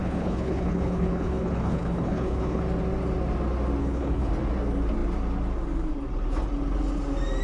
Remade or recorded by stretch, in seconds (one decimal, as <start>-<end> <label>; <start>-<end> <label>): 0.0-2.6 remade; 2.6-3.8 recorded; 3.8-4.3 remade; 4.3-7.4 recorded